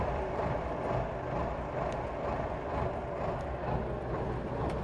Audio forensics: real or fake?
real